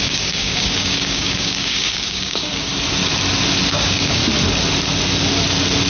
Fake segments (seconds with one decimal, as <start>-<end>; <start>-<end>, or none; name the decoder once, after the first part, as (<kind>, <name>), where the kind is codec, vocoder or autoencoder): 0.0-2.7 (codec, DAC); 3.7-4.2